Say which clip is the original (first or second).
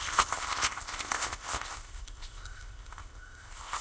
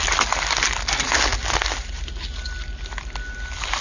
second